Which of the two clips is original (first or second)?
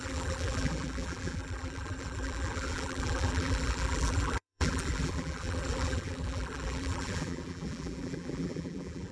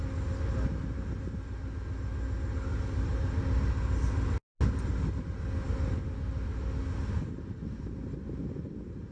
second